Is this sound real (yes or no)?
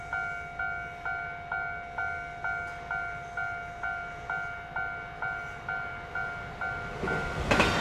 yes